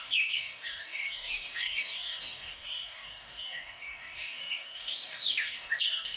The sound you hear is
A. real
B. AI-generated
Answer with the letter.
B